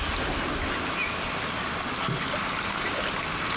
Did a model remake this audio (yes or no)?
no